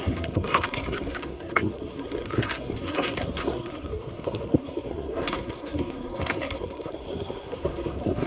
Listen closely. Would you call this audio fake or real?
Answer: fake